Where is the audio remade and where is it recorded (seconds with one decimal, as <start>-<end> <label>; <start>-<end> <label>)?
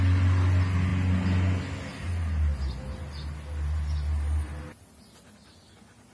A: 0.0-6.1 recorded